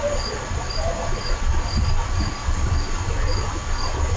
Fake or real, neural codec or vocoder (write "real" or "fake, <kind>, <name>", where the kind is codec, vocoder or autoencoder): real